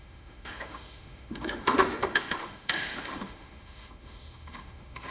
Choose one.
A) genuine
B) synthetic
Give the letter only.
B